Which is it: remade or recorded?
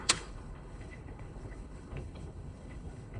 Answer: remade